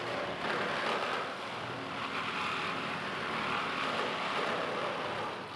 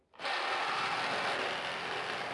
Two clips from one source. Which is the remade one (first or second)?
first